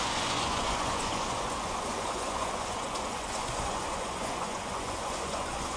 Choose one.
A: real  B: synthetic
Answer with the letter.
B